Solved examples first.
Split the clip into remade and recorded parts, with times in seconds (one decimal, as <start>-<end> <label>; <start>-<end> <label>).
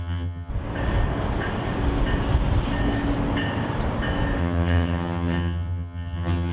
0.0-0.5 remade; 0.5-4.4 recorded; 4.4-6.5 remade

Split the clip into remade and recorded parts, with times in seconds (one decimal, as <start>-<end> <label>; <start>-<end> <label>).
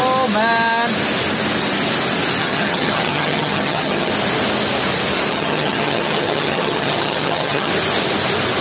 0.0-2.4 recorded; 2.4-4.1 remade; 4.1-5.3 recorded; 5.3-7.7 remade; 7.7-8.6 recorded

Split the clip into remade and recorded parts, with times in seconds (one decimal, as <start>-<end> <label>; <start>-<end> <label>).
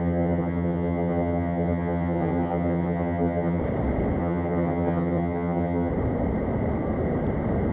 0.0-3.6 remade; 3.6-4.2 recorded; 4.2-5.9 remade; 5.9-7.7 recorded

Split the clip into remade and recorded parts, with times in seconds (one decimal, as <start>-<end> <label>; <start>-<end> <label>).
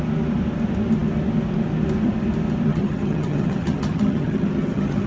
0.0-2.7 recorded; 2.7-5.1 remade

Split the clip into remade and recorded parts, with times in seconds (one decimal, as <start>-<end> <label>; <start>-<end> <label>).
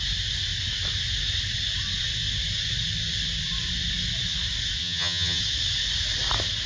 0.0-4.8 recorded; 4.8-5.4 remade; 5.4-6.7 recorded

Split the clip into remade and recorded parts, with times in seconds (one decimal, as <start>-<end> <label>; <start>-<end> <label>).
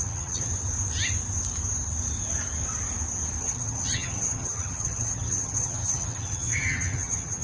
0.0-0.5 remade; 0.5-3.4 recorded; 3.4-7.4 remade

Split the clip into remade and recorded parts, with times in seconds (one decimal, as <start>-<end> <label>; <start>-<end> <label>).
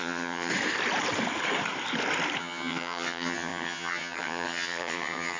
0.0-0.5 remade; 0.5-2.4 recorded; 2.4-5.4 remade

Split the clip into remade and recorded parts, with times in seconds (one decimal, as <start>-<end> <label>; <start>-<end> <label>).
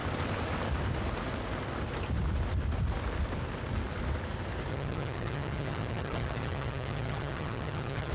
0.0-4.7 recorded; 4.7-8.1 remade